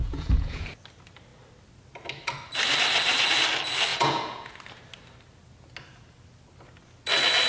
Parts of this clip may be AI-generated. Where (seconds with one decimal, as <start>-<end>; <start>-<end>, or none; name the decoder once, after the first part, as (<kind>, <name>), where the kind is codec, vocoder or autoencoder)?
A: 0.0-0.6 (vocoder, Vocos); 3.9-4.5